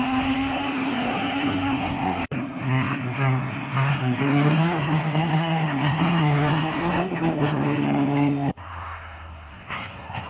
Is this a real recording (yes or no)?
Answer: no